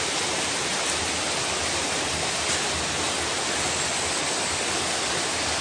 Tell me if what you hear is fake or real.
real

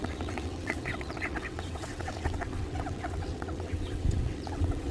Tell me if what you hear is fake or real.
fake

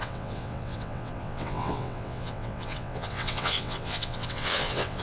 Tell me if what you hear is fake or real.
fake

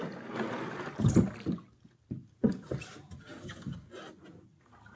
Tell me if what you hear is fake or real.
real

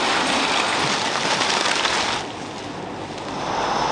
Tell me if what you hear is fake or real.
real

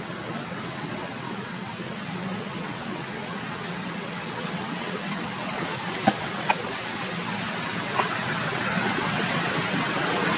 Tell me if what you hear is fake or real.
fake